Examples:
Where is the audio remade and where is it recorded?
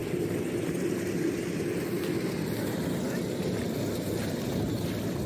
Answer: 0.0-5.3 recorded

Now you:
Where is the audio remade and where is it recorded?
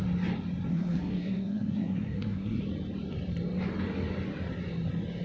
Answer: 0.0-0.7 recorded; 0.7-2.6 remade; 2.6-5.2 recorded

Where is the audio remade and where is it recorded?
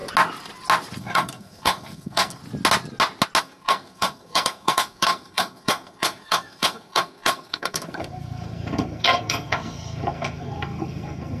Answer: 0.0-1.0 recorded; 1.0-2.4 remade; 2.4-3.4 recorded; 3.4-11.4 remade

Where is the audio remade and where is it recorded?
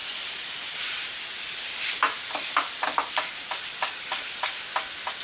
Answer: 0.0-5.2 recorded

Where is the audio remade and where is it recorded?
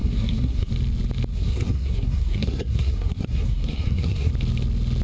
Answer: 0.0-0.7 remade; 0.7-1.3 recorded; 1.3-4.3 remade; 4.3-5.0 recorded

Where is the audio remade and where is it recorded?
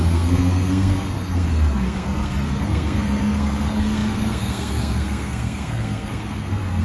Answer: 0.0-6.8 remade